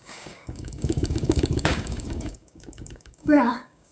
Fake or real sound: fake